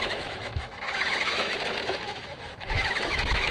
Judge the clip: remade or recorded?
remade